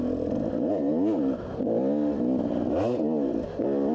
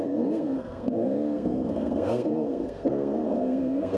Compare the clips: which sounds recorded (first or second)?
first